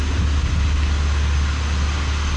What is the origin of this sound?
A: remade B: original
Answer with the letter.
B